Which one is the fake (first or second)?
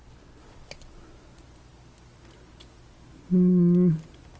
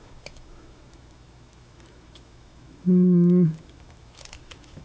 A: second